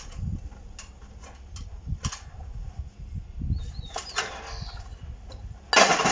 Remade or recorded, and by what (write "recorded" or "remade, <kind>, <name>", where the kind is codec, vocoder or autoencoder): recorded